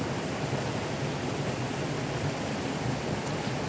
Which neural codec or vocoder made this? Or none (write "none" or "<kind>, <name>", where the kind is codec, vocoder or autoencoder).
none